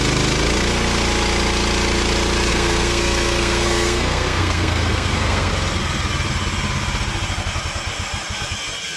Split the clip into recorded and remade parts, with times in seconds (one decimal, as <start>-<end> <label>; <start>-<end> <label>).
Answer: 0.0-2.5 recorded; 2.5-5.5 remade; 5.5-9.0 recorded